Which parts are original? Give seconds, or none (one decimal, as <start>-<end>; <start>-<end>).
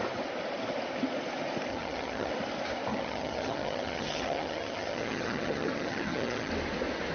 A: 0.0-1.7; 2.3-2.9; 6.5-7.1